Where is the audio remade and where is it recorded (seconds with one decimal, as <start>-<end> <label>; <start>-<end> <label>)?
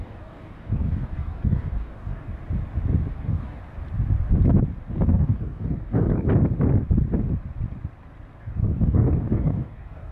0.0-2.3 remade; 2.3-3.1 recorded; 3.1-3.6 remade; 3.6-4.9 recorded; 4.9-6.3 remade; 6.3-8.4 recorded; 8.4-10.1 remade